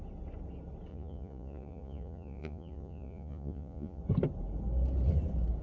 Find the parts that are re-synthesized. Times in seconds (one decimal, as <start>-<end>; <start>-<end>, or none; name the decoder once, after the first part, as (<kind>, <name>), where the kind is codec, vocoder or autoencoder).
0.9-4.0 (vocoder, Vocos)